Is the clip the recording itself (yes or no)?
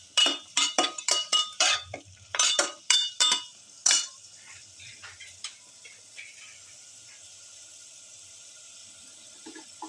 no